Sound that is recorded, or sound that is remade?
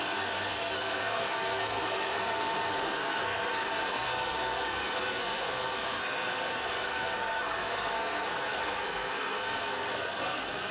remade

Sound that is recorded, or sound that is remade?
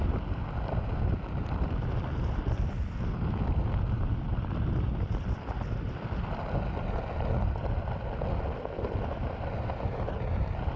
recorded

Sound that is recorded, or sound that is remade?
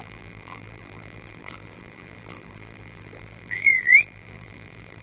remade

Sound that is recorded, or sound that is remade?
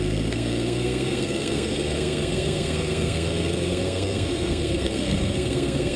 remade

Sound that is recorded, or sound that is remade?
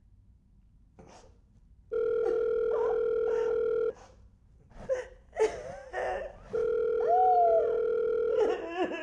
recorded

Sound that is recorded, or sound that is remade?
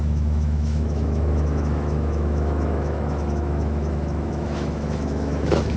remade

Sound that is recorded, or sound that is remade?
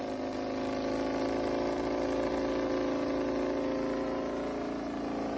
recorded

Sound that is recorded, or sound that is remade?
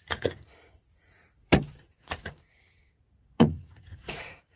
remade